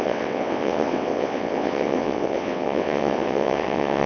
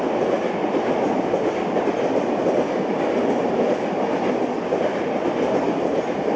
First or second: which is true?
second